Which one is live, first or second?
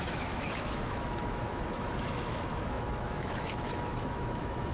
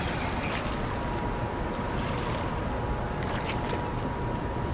second